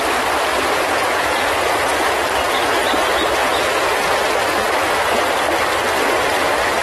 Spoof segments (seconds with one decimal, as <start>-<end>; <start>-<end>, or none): 0.5-2.2; 3.4-4.2